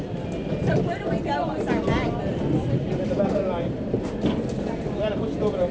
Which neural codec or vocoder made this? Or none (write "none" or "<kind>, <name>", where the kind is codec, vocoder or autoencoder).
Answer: none